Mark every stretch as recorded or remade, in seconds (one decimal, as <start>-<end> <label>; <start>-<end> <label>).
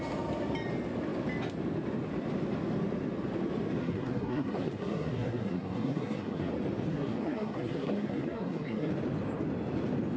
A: 0.0-3.8 recorded; 3.8-6.5 remade; 6.5-6.9 recorded; 6.9-8.9 remade; 8.9-10.2 recorded